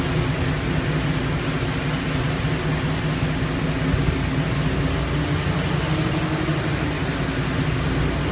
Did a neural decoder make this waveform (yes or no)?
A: no